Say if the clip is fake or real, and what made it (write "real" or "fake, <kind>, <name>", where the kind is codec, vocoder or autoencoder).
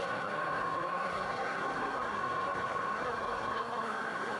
fake, codec, SNAC